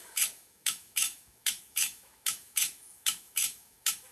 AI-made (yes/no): yes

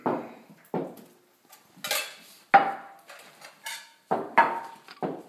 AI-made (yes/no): no